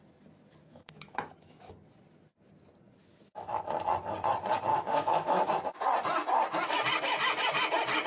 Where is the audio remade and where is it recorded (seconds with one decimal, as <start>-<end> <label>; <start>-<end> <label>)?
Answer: 0.0-0.6 recorded; 0.6-1.7 remade; 1.7-3.0 recorded; 3.0-3.6 remade; 3.6-4.7 recorded; 4.7-5.5 remade; 5.5-8.1 recorded